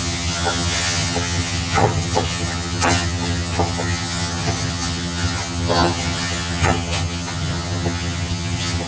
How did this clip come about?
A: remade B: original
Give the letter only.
A